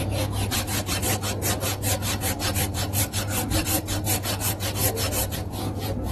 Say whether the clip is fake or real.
real